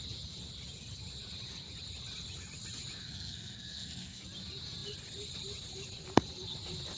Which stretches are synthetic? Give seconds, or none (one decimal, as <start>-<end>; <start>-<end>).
3.0-4.2